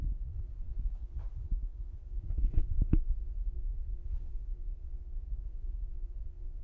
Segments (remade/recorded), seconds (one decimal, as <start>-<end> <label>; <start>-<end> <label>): 0.0-1.0 remade; 1.0-2.0 recorded; 2.0-6.6 remade